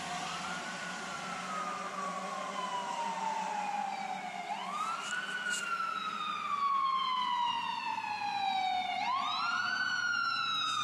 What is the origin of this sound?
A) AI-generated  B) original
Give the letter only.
B